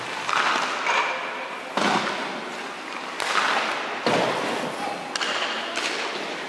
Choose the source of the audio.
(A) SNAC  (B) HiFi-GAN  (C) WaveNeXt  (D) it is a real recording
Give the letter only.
D